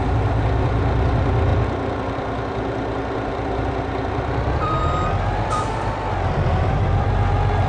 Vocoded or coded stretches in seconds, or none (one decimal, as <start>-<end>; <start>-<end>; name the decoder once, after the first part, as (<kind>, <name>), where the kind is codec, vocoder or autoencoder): 0.0-7.7 (vocoder, BigVGAN v2)